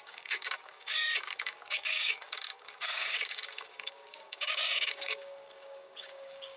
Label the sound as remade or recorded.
remade